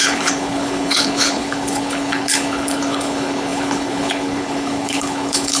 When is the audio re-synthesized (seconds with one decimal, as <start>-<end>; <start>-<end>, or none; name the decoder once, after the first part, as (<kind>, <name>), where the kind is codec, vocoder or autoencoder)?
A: 0.0-5.6 (codec, HILCodec)